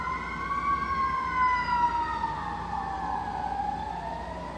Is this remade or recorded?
recorded